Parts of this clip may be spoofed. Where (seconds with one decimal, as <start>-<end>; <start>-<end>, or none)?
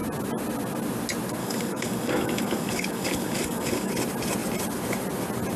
1.4-3.9